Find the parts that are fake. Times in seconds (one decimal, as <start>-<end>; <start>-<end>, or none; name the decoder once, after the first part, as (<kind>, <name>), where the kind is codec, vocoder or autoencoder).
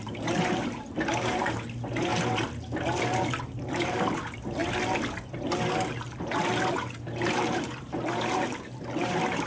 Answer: 0.0-2.1 (vocoder, BigVGAN v2); 3.4-4.6; 5.8-9.5